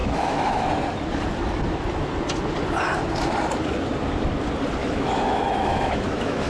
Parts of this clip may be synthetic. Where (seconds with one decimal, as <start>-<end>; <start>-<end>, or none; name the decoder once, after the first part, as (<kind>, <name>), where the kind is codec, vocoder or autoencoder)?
0.0-0.7 (autoencoder, DAC-VAE); 4.8-6.5

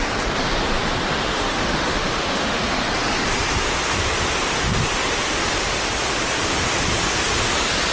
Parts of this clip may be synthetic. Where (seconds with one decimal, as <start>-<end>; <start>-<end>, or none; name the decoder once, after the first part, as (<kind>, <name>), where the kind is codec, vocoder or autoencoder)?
1.3-2.8 (autoencoder, DAC-VAE)

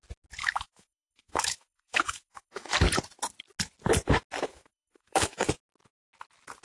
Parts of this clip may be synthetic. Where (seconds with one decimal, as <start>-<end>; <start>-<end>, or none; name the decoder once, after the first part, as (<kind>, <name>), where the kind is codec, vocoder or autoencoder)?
0.4-2.7 (autoencoder, DAC-VAE); 4.5-5.5